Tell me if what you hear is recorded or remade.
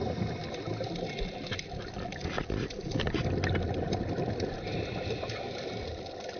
recorded